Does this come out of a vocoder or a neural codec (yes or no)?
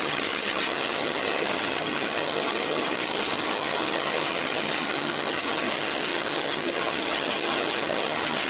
yes